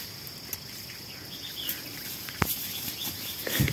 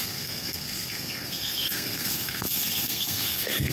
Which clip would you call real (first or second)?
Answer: first